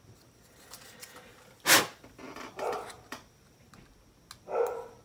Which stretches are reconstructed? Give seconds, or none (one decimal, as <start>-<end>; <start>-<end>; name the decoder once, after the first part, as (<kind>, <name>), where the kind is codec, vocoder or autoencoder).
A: 1.3-3.7 (vocoder, BigVGAN v2)